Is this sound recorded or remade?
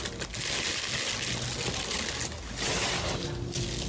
recorded